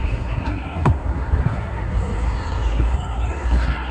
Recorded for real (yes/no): no